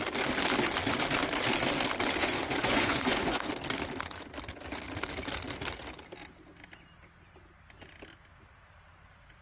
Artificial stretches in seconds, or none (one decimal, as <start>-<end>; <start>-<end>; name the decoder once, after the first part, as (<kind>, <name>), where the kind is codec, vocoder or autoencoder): 2.2-3.5 (vocoder, Vocos)